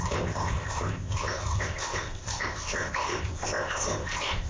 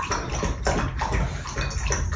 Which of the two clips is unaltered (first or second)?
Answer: second